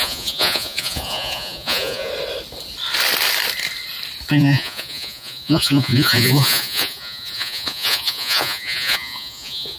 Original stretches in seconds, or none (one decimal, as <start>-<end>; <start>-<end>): 2.1-4.3